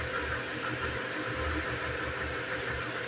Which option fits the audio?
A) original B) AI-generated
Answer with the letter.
A